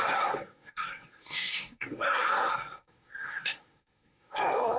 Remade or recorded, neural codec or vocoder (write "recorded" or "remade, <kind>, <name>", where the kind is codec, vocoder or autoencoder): remade, codec, SNAC